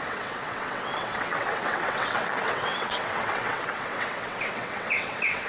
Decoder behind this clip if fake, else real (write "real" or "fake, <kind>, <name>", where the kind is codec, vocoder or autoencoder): fake, vocoder, WaveNeXt